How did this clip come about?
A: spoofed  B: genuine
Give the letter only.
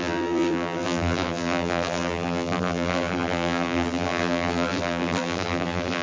A